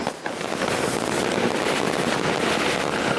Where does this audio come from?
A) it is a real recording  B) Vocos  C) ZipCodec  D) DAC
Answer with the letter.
A